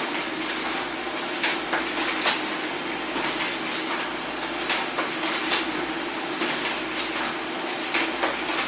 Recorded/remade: recorded